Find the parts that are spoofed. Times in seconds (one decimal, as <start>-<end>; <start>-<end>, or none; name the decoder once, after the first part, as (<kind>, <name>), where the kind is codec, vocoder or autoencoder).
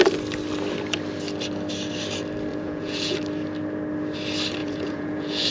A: 2.5-3.2 (vocoder, Vocos); 4.6-5.5